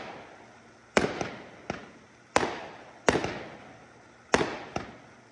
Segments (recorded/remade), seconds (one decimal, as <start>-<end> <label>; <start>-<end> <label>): 0.0-5.3 recorded